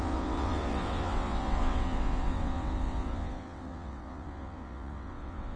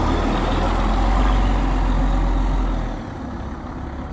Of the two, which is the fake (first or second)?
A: first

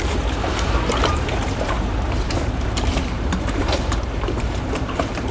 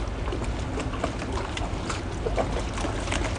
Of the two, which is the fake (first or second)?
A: first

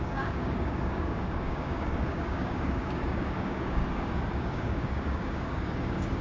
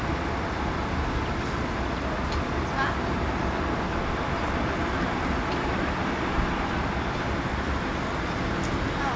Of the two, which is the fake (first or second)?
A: first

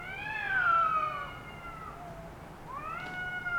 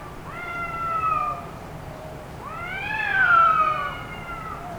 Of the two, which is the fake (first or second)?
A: second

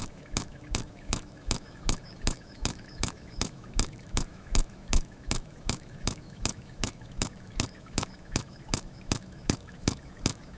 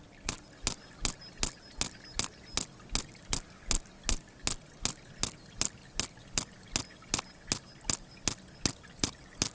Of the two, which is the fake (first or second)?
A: first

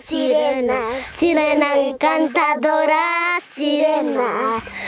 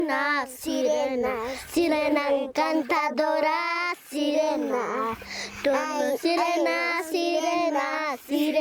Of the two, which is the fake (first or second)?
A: first